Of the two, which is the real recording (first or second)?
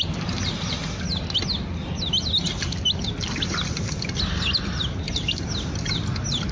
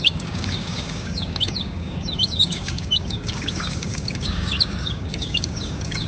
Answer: first